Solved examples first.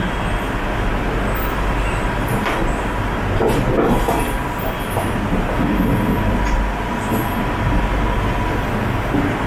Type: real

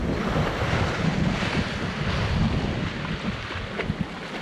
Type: real